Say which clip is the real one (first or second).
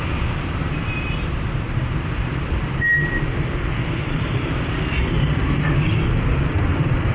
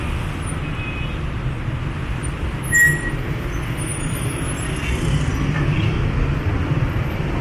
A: second